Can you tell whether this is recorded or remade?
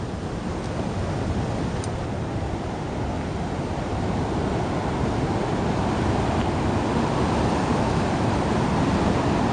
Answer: recorded